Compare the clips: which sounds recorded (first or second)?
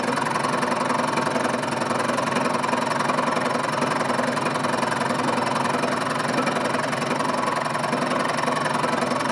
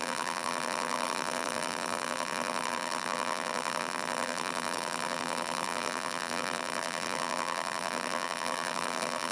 first